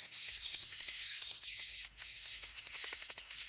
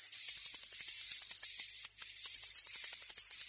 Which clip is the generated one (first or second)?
first